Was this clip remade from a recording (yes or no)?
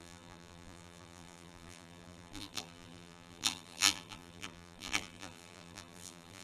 yes